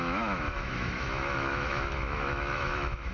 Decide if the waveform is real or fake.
fake